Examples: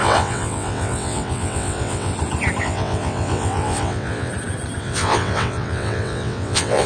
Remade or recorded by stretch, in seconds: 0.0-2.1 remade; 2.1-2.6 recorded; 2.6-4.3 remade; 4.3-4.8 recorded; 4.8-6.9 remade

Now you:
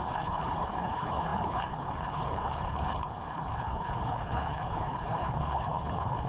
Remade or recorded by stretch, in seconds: 0.0-6.3 remade

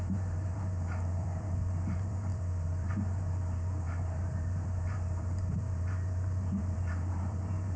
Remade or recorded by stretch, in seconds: 0.0-7.8 remade

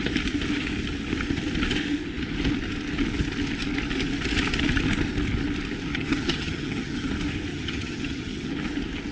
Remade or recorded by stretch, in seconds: 0.0-5.9 recorded; 5.9-7.1 remade; 7.1-7.5 recorded; 7.5-8.5 remade; 8.5-9.1 recorded

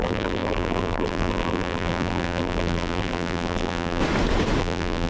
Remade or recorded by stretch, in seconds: 0.0-4.0 remade; 4.0-4.6 recorded; 4.6-5.1 remade

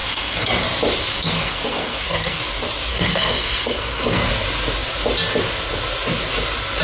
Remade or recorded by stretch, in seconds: 0.0-0.6 remade; 0.6-1.1 recorded; 1.1-2.4 remade; 2.4-2.9 recorded; 2.9-4.3 remade; 4.3-6.8 recorded

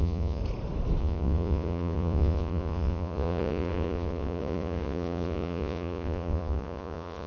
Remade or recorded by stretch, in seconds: 0.0-0.4 remade; 0.4-1.0 recorded; 1.0-7.3 remade